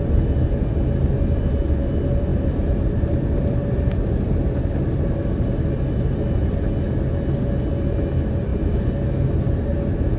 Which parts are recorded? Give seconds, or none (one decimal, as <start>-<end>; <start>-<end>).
0.0-2.3; 6.6-10.2